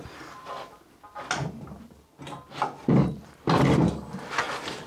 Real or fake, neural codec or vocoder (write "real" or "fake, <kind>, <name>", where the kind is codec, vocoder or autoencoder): real